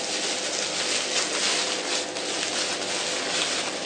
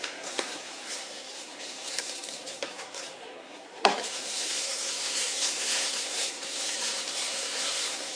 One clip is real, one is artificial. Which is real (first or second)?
first